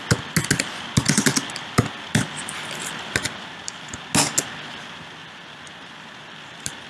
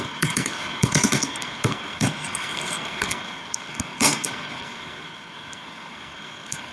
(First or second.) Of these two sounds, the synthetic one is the second